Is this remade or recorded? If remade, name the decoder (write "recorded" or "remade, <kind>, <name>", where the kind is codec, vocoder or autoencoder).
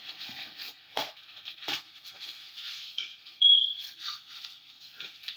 remade, codec, SNAC